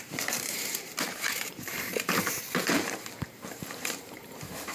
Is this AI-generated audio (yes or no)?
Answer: yes